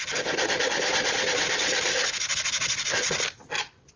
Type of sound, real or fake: real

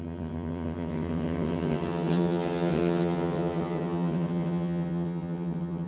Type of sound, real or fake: fake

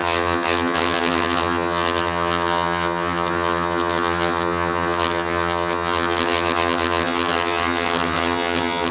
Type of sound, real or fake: fake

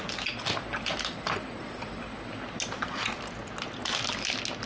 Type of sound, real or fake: real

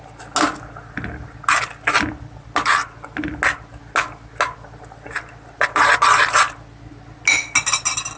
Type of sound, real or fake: real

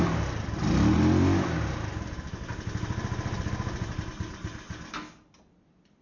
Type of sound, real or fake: real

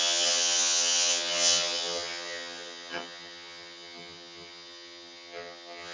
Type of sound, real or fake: fake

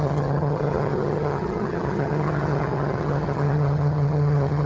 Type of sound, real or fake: fake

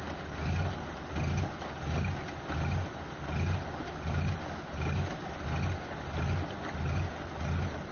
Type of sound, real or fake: real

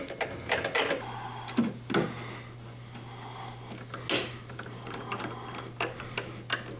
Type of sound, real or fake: real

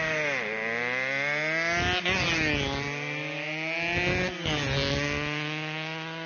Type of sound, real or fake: real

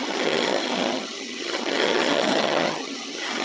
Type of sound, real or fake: fake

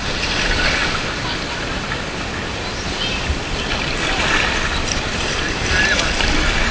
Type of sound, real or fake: real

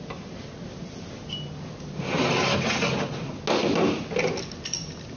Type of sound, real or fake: real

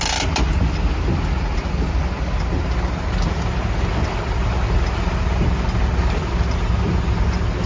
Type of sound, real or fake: real